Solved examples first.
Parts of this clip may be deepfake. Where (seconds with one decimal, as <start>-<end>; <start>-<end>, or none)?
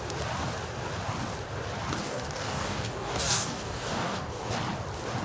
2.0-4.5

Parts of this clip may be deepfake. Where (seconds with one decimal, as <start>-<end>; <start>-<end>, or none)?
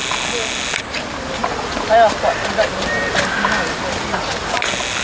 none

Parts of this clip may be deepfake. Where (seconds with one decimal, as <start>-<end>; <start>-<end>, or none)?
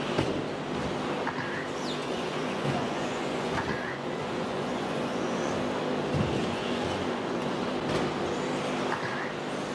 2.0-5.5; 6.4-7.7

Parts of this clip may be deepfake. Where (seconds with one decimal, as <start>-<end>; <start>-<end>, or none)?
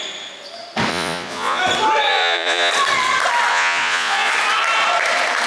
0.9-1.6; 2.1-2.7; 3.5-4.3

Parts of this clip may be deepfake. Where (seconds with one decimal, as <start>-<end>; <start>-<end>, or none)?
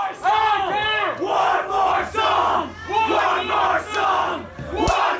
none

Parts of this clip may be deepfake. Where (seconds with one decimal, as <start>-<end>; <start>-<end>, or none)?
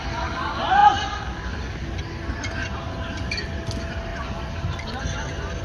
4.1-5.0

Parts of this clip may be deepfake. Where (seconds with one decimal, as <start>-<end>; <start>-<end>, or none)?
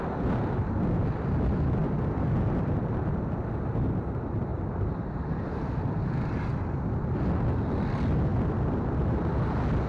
1.8-3.3; 4.5-6.0; 8.3-8.8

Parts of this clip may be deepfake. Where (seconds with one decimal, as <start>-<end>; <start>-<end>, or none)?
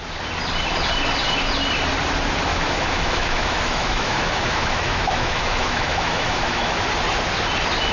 2.5-6.7